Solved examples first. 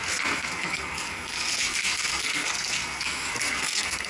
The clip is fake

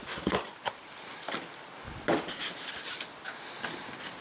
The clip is real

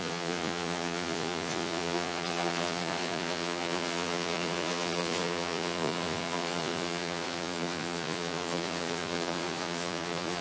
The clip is fake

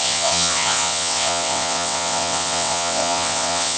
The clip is fake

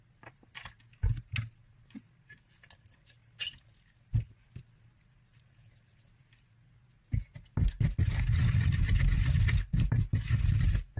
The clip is real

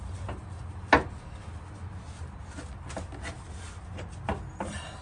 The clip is real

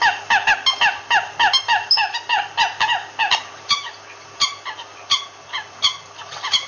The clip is real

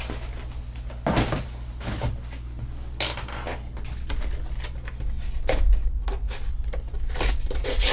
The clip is real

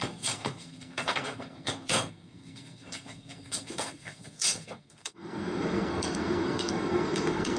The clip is fake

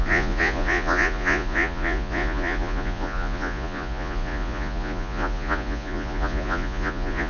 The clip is fake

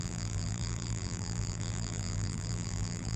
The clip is fake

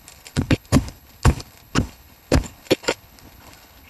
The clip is fake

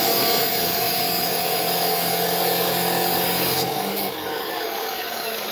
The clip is fake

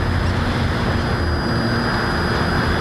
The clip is real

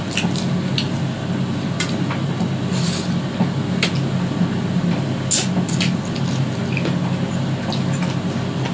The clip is real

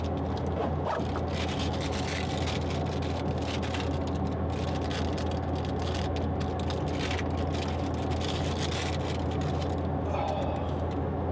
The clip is real